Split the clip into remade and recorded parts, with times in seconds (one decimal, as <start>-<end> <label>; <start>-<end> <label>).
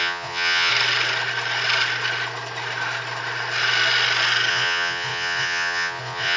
0.0-0.7 remade; 0.7-4.5 recorded; 4.5-6.4 remade